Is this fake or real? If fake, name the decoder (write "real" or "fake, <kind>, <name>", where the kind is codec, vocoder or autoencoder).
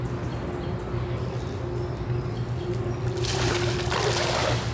real